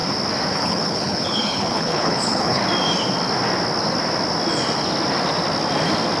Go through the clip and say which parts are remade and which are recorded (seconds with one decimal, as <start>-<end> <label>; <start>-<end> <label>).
0.0-0.5 recorded; 0.5-2.6 remade; 2.6-6.2 recorded